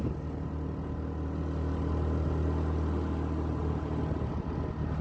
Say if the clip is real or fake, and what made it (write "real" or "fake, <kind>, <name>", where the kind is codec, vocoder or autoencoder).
real